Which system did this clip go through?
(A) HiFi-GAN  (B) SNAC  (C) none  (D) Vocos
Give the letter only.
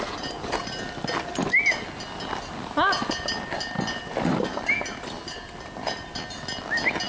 C